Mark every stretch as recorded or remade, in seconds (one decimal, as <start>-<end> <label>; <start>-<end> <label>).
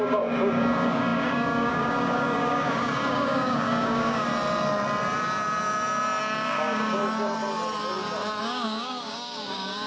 0.0-4.3 remade; 4.3-6.2 recorded; 6.2-7.0 remade; 7.0-8.4 recorded; 8.4-9.9 remade